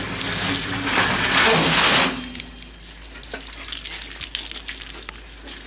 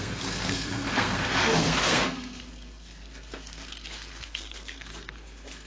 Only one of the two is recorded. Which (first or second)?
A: first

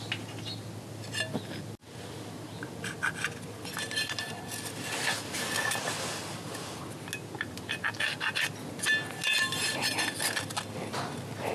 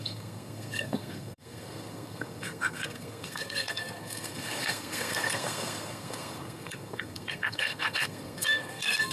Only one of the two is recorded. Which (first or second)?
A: first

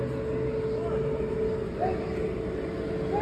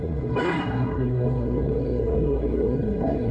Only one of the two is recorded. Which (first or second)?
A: first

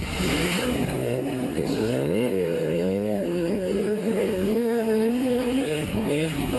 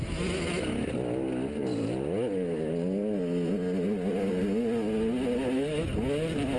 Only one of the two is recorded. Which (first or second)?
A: second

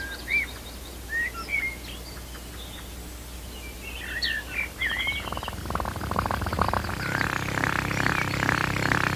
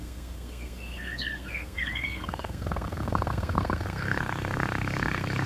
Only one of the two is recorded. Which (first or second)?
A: first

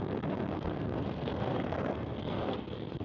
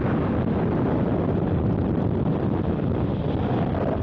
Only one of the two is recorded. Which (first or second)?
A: second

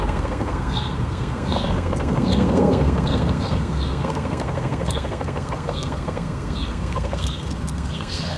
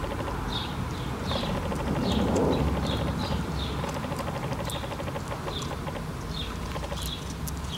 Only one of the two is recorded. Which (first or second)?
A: second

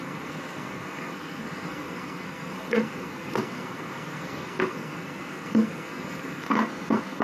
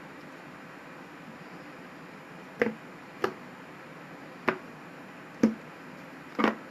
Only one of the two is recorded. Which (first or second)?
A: second